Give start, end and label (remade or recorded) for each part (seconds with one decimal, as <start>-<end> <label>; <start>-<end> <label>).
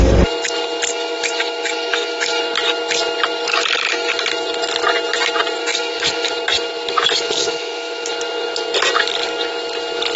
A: 0.0-0.9 recorded; 0.9-2.4 remade; 2.4-3.5 recorded; 3.5-4.1 remade; 4.1-5.6 recorded; 5.6-6.3 remade; 6.3-7.4 recorded; 7.4-8.1 remade; 8.1-10.2 recorded